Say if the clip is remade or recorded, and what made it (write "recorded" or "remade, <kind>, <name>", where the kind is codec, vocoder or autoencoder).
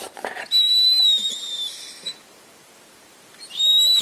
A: remade, vocoder, BigVGAN v2